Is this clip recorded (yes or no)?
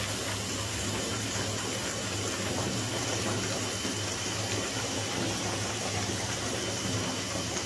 yes